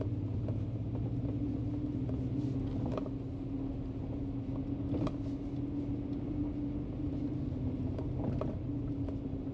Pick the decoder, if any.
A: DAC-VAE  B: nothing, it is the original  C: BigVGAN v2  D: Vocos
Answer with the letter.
B